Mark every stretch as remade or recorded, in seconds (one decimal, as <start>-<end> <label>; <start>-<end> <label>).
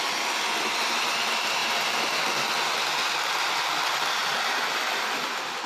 0.0-5.7 recorded